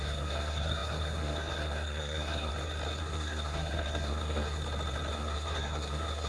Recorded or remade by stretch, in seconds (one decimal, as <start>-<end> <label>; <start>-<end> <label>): 0.0-2.5 remade; 2.5-3.0 recorded; 3.0-4.6 remade; 4.6-5.1 recorded; 5.1-6.3 remade